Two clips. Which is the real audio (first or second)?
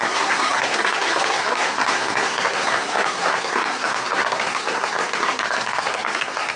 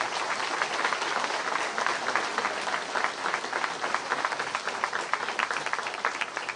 second